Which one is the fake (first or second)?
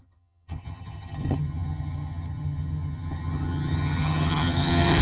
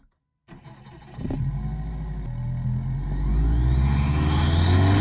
first